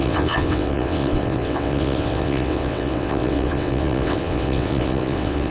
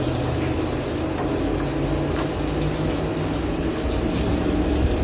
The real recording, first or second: second